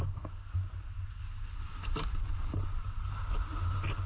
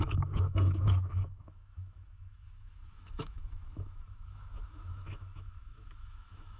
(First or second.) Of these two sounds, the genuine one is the first